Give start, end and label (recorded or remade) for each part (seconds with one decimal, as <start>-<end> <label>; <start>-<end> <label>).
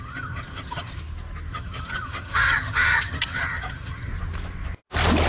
0.0-1.0 remade; 1.0-1.5 recorded; 1.5-4.1 remade; 4.1-5.3 recorded